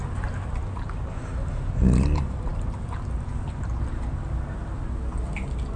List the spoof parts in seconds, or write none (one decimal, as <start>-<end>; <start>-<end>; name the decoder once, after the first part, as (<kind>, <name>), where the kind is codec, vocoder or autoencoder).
none